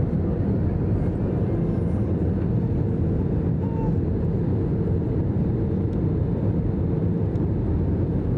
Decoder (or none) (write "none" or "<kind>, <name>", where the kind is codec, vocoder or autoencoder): none